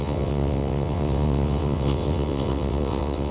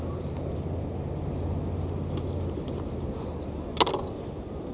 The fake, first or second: first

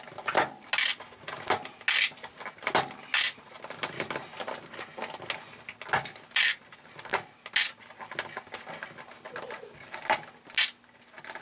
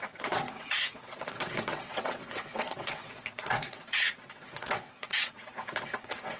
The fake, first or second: second